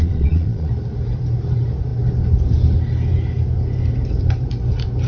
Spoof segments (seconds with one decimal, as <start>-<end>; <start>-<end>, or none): 0.0-0.7